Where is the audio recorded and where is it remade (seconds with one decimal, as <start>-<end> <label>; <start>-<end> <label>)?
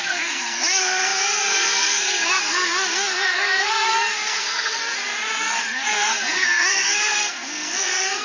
0.0-4.8 remade; 4.8-5.4 recorded; 5.4-8.2 remade